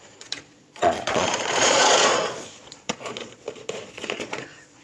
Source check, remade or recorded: remade